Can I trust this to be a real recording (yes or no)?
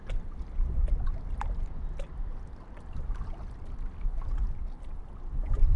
yes